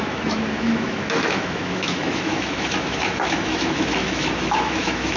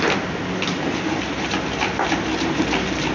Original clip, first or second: second